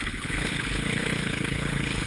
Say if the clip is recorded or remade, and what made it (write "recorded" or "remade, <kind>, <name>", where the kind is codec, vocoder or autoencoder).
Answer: remade, codec, HILCodec